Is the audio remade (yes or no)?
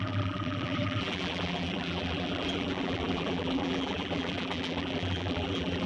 yes